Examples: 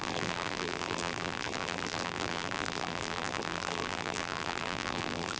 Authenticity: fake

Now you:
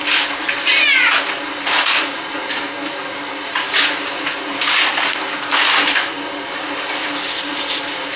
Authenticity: real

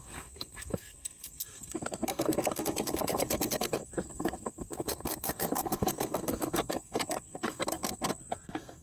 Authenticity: fake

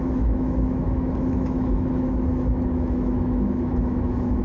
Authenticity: fake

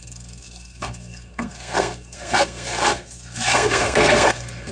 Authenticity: fake